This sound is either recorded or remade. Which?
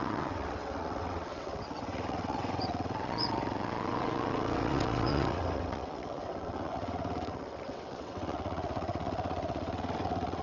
remade